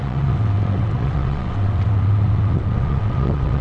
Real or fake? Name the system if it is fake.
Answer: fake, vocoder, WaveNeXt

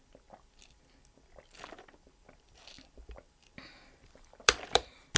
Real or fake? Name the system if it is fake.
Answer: fake, vocoder, BigVGAN v2